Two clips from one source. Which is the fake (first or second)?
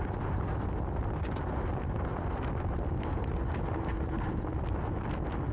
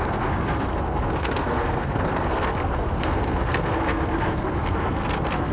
second